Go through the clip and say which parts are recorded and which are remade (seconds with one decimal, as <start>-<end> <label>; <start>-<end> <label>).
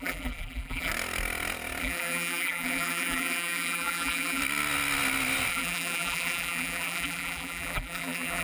0.0-0.9 remade; 0.9-1.8 recorded; 1.8-4.4 remade; 4.4-5.5 recorded; 5.5-8.4 remade